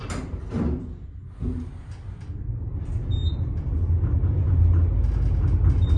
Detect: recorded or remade recorded